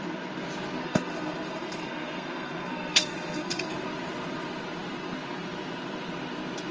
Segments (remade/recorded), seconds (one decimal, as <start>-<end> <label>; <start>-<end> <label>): 0.0-0.8 recorded; 0.8-3.7 remade; 3.7-6.7 recorded